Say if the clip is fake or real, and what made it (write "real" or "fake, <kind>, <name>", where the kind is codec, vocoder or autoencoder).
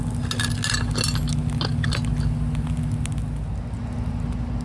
real